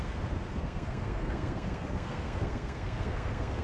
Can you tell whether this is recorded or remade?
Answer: remade